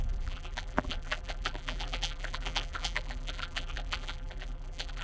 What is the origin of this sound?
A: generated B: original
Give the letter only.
A